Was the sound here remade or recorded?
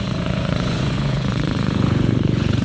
remade